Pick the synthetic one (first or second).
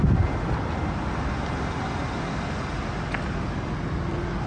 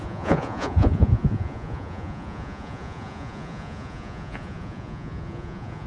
second